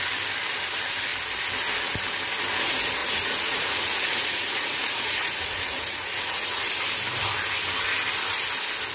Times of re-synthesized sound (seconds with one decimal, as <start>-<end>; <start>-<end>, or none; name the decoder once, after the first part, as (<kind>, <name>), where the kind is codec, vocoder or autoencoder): 3.0-6.7 (vocoder, Vocos)